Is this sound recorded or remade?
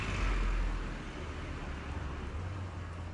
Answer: recorded